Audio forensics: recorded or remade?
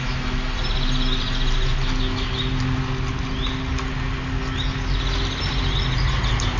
recorded